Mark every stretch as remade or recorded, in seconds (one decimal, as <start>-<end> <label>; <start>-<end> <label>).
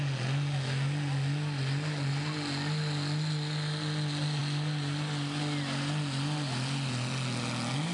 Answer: 0.0-7.9 recorded